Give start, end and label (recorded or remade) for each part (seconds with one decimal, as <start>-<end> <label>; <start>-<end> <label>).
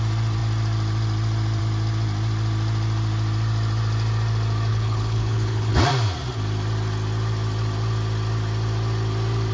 0.0-4.7 recorded; 4.7-5.7 remade; 5.7-9.5 recorded